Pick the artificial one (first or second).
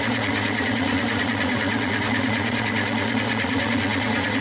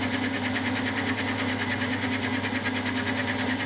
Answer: first